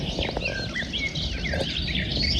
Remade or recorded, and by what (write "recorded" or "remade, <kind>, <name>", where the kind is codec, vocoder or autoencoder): recorded